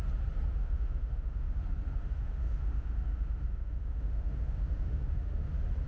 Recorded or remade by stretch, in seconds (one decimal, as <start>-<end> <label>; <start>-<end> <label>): 0.0-0.6 recorded; 0.6-1.6 remade; 1.6-2.0 recorded; 2.0-5.5 remade; 5.5-5.9 recorded